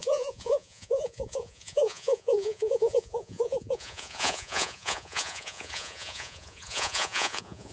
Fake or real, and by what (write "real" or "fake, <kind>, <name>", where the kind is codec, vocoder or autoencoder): fake, vocoder, Vocos